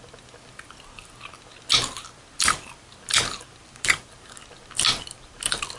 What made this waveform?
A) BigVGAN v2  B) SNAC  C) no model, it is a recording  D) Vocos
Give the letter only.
C